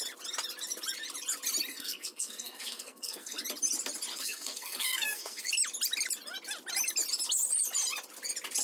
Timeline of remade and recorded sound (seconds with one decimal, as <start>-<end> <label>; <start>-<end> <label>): 0.0-1.7 recorded; 1.7-3.4 remade; 3.4-4.1 recorded; 4.1-5.5 remade; 5.5-8.6 recorded